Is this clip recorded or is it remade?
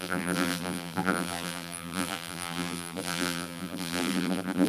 remade